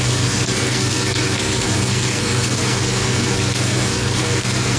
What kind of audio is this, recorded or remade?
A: remade